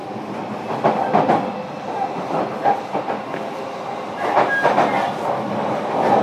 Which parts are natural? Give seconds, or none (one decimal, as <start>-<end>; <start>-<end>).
0.0-6.2